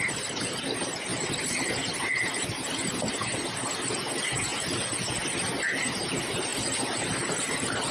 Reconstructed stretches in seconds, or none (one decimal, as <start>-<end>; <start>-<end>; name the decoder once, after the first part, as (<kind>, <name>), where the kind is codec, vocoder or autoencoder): none